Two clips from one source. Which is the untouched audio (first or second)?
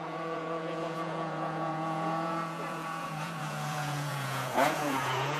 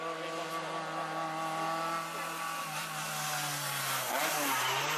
second